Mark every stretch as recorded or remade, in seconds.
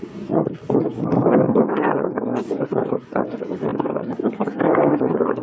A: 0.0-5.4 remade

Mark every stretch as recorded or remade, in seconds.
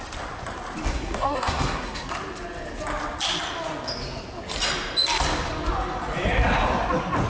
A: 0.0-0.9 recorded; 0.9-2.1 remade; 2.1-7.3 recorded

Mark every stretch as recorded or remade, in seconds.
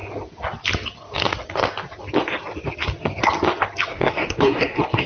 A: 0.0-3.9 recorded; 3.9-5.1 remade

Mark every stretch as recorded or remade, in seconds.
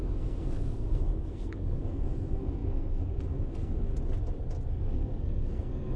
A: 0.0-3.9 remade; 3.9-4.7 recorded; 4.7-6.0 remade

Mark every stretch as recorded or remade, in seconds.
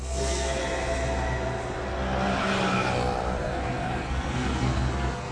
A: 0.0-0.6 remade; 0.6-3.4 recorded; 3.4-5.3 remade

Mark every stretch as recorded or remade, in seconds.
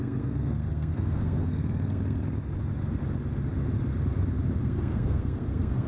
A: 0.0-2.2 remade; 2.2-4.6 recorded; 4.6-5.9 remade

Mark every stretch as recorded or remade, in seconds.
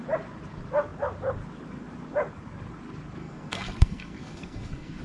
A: 0.0-3.2 recorded; 3.2-5.0 remade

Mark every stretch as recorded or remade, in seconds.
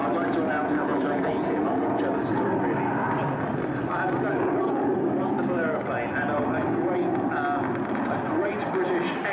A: 0.0-9.3 recorded